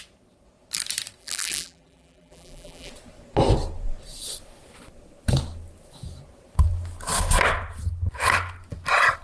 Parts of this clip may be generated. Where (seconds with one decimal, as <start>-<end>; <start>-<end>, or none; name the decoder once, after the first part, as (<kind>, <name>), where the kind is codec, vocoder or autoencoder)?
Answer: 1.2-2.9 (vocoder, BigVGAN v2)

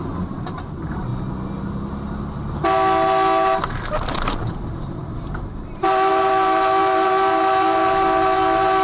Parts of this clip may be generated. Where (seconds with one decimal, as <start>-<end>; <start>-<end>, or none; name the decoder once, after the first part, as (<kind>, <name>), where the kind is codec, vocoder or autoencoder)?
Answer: 0.0-1.1 (vocoder, BigVGAN v2); 4.5-8.8

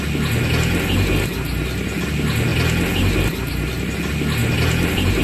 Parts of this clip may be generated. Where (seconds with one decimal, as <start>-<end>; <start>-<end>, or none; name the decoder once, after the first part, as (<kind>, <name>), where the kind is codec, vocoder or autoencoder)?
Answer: 4.4-5.2 (vocoder, BigVGAN v2)

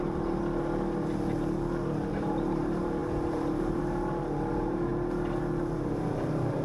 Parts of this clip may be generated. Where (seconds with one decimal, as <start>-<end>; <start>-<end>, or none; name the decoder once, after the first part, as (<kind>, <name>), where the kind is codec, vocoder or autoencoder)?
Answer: 0.0-0.4 (vocoder, BigVGAN v2); 2.1-4.9; 5.9-6.6